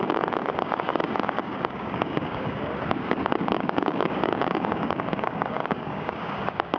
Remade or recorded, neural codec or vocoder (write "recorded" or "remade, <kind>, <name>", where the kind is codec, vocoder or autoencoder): remade, codec, DAC